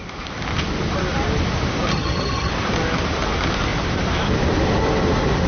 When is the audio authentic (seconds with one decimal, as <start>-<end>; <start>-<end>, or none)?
0.0-1.9; 2.5-5.5